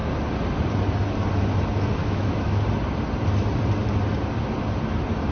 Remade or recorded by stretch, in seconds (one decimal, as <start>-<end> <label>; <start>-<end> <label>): 0.0-2.0 recorded; 2.0-2.6 remade; 2.6-5.3 recorded